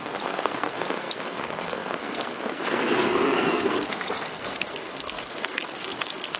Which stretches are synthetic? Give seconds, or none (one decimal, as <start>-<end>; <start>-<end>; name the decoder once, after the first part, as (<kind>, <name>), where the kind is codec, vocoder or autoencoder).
0.0-6.4 (codec, SNAC)